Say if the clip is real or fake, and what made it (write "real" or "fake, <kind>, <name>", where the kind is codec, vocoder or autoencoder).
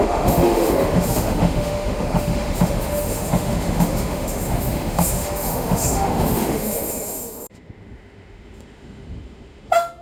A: fake, autoencoder, DAC-VAE